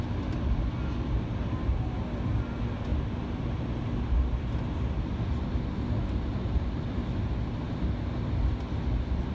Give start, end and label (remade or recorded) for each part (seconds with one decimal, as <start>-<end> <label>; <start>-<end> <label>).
0.0-9.3 recorded